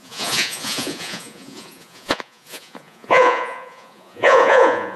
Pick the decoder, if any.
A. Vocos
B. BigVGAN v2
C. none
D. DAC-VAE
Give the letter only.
A